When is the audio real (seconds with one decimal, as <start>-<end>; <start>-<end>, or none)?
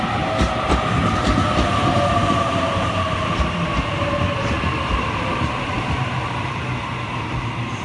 0.0-1.8; 6.5-7.8